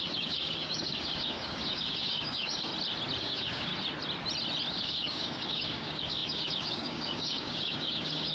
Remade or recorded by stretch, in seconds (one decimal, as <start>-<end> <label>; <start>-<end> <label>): 0.0-2.7 remade; 2.7-3.2 recorded; 3.2-3.7 remade; 3.7-4.7 recorded; 4.7-8.3 remade